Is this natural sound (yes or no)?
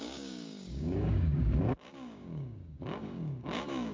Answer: no